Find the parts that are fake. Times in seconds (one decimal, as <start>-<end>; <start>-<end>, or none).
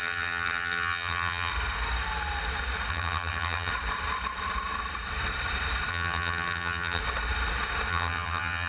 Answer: 0.0-1.5; 2.9-3.7; 5.9-7.0; 7.9-8.7